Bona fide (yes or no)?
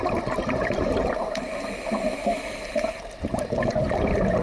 no